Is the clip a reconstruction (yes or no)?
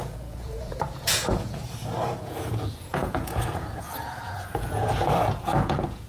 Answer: yes